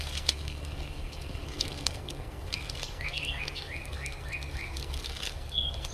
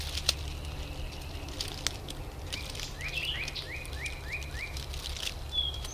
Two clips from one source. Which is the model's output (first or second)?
first